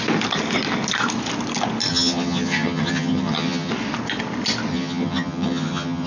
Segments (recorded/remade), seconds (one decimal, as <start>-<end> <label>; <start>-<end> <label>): 0.0-1.9 recorded; 1.9-3.7 remade; 3.7-4.7 recorded; 4.7-6.1 remade